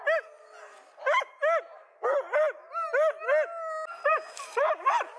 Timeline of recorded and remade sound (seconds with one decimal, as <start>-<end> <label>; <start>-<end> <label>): 0.0-5.2 recorded